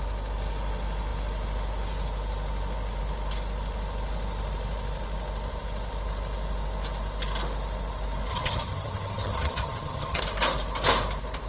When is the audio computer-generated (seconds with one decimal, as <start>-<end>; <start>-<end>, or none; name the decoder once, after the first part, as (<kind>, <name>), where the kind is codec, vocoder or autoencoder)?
8.3-10.2 (vocoder, HiFi-GAN)